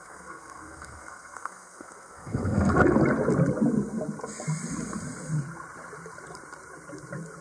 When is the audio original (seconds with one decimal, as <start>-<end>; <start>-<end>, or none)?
2.7-7.4

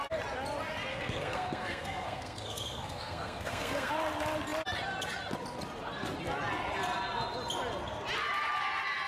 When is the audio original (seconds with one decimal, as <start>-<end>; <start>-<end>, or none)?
0.0-0.9; 3.9-9.1

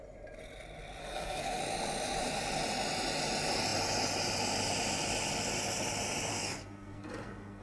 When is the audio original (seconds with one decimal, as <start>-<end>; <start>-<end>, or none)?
0.0-1.0; 1.6-6.3

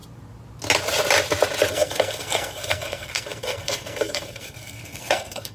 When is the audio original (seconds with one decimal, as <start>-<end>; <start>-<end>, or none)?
0.0-1.7

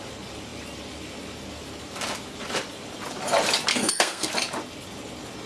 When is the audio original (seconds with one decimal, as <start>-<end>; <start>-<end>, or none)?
0.0-3.7; 4.3-5.5

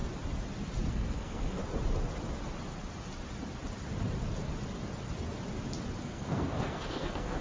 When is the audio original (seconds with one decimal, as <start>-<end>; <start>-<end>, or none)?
0.0-0.9; 1.6-6.0